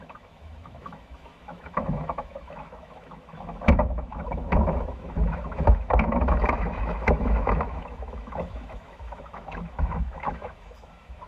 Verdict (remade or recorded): remade